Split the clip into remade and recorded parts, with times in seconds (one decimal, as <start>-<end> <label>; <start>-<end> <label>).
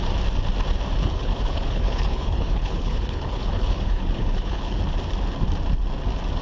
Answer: 0.0-1.0 recorded; 1.0-4.8 remade; 4.8-6.4 recorded